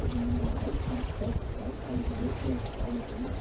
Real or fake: fake